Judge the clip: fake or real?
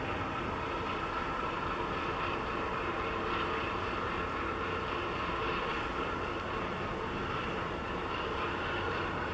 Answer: real